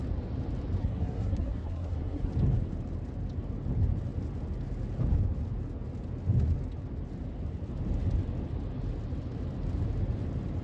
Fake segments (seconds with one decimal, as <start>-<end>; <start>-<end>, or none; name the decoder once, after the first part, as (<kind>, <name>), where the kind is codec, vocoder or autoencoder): 0.8-2.3 (codec, SNAC)